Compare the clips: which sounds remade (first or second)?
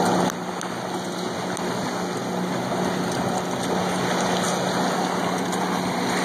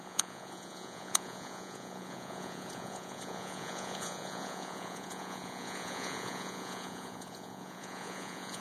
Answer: second